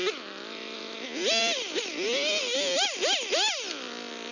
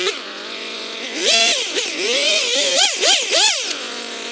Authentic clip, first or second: first